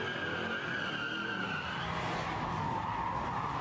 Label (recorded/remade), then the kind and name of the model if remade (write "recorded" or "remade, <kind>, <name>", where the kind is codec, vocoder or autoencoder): recorded